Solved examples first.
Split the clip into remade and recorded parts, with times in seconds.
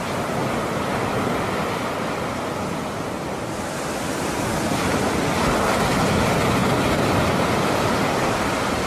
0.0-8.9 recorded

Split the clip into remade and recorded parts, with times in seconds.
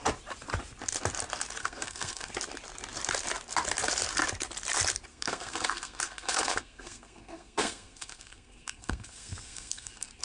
0.0-1.6 recorded; 1.6-2.3 remade; 2.3-5.1 recorded; 5.1-10.2 remade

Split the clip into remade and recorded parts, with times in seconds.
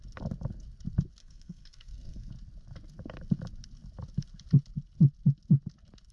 0.0-1.2 recorded; 1.2-2.3 remade; 2.3-6.1 recorded